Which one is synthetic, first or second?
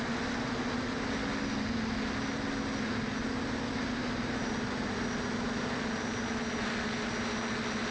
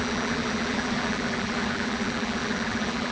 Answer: second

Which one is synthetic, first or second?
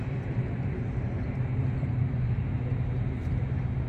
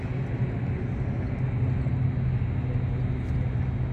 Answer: first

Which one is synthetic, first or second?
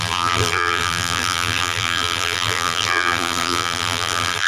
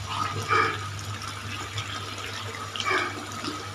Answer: first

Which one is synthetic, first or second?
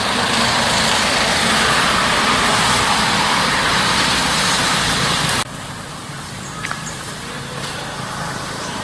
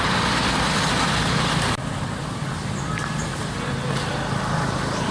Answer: first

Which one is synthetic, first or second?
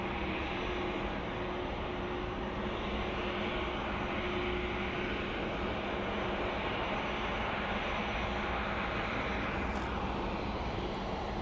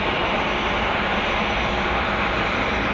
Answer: second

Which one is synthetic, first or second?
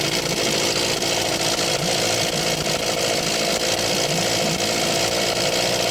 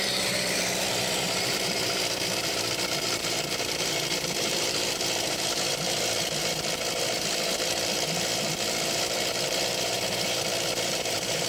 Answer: second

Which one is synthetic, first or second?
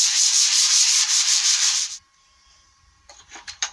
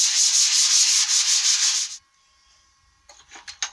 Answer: first